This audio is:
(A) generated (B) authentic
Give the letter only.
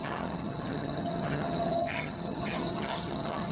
A